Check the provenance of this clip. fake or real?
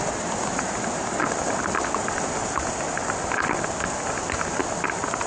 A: real